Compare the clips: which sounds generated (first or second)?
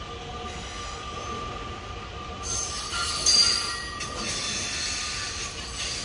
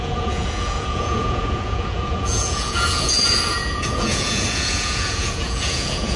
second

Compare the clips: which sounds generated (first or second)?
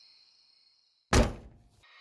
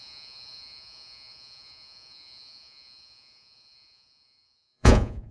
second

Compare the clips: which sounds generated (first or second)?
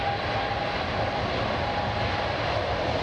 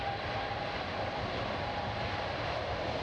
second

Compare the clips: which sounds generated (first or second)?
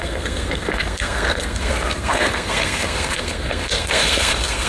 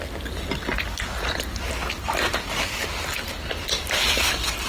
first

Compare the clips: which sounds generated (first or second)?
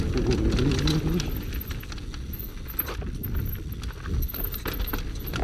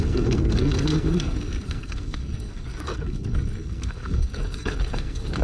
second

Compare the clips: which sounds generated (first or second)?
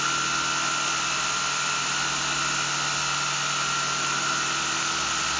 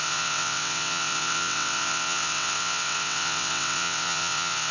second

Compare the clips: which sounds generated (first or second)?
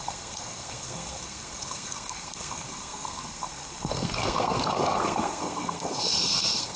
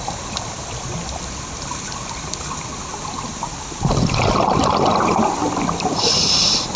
first